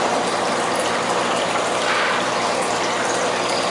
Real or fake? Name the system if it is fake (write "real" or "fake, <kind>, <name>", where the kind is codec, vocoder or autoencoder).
real